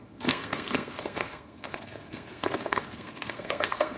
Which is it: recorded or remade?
remade